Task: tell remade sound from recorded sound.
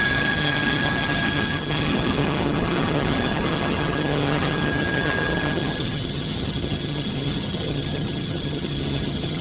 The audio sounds remade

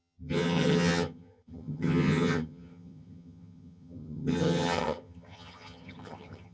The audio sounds remade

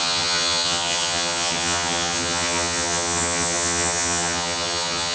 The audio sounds remade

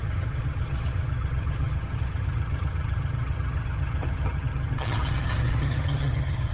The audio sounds remade